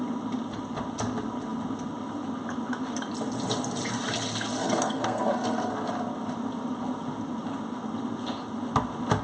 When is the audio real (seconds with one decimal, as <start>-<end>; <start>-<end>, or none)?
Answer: 0.0-4.6; 5.7-9.2